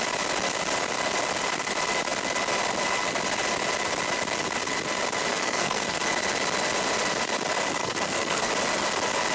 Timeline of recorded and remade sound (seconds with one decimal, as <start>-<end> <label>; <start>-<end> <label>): 0.0-5.3 recorded; 5.3-6.0 remade; 6.0-7.8 recorded; 7.8-8.5 remade; 8.5-9.3 recorded